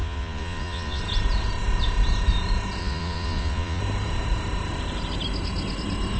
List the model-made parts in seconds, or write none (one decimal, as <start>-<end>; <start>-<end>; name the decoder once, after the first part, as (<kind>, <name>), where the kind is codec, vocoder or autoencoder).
0.0-1.0 (vocoder, Vocos); 2.8-3.8